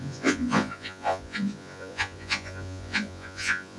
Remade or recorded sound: remade